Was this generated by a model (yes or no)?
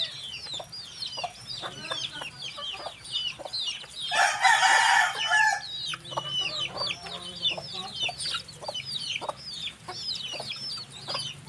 no